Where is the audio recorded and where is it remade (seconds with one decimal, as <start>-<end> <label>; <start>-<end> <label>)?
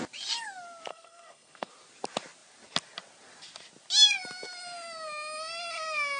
0.0-0.9 recorded; 0.9-1.7 remade; 1.7-6.2 recorded